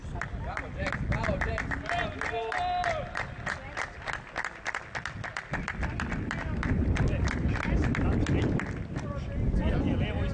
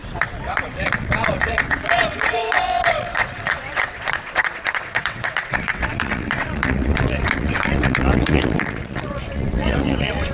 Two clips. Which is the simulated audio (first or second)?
second